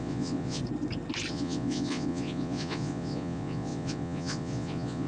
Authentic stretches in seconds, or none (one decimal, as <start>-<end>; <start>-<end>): 0.6-1.3